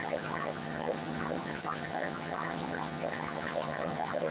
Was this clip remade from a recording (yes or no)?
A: yes